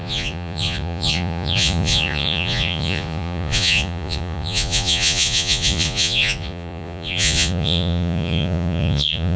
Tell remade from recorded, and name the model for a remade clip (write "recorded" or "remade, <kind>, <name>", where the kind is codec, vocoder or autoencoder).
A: remade, vocoder, Vocos